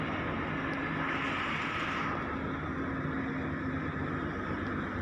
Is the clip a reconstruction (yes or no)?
no